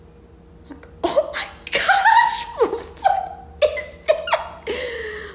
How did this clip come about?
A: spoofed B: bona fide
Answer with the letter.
B